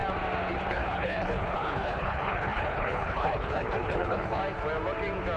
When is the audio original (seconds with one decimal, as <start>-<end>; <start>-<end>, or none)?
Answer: 0.0-0.7; 4.4-5.4